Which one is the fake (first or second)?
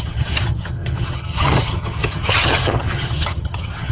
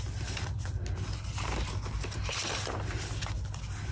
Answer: first